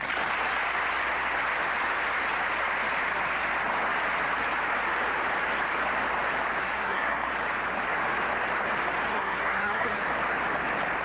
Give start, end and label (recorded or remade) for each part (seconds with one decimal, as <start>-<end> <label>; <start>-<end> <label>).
0.0-6.6 recorded; 6.6-7.3 remade; 7.3-9.1 recorded; 9.1-10.0 remade; 10.0-11.0 recorded